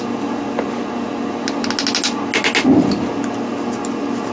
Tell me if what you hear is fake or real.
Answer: real